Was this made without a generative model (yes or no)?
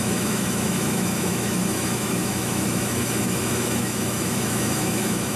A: no